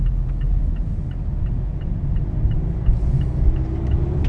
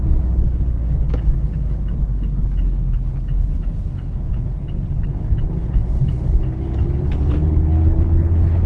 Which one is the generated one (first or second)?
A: second